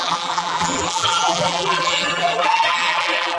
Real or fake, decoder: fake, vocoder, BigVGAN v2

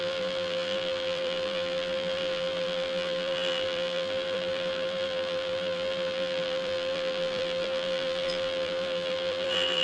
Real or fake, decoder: fake, vocoder, BigVGAN v2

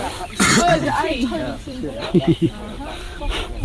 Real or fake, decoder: fake, vocoder, BigVGAN v2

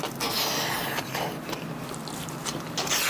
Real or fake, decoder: real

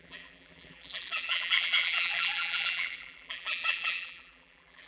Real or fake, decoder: fake, vocoder, BigVGAN v2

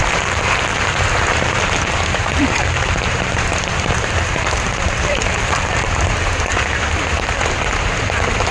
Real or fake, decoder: fake, vocoder, BigVGAN v2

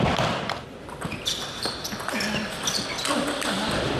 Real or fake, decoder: fake, vocoder, BigVGAN v2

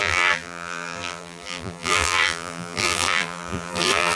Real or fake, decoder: fake, vocoder, BigVGAN v2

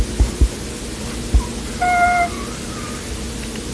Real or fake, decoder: real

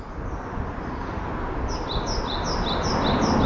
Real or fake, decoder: fake, vocoder, BigVGAN v2